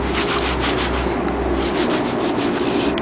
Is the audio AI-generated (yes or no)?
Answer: no